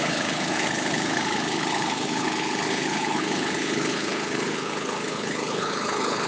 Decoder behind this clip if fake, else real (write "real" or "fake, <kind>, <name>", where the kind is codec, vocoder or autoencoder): fake, codec, HILCodec